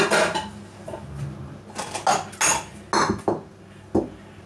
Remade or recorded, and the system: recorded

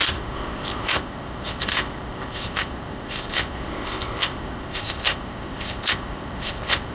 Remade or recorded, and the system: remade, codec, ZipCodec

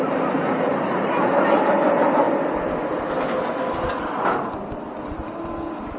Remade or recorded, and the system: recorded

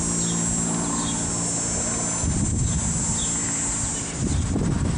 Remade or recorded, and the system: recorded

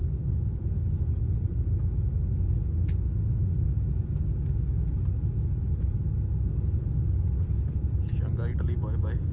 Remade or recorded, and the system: recorded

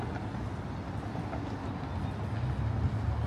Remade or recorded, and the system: recorded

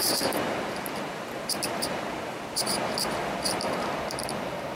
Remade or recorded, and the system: remade, vocoder, BigVGAN v2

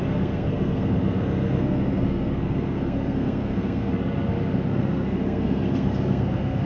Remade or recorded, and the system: remade, codec, SNAC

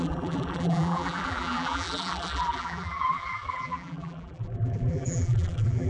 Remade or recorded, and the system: remade, vocoder, BigVGAN v2